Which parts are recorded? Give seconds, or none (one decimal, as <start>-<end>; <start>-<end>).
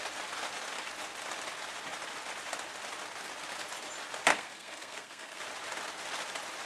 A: 0.0-4.3; 5.4-6.7